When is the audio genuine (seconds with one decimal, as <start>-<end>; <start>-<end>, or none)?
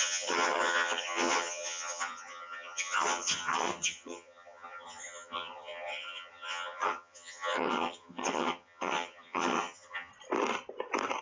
10.1-11.2